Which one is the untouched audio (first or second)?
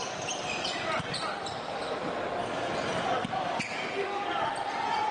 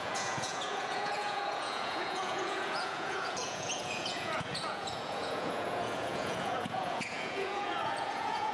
first